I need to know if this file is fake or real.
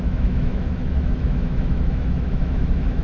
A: fake